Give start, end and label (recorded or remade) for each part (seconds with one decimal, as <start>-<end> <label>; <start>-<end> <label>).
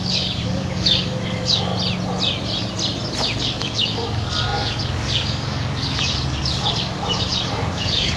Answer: 0.0-1.7 remade; 1.7-3.4 recorded; 3.4-8.2 remade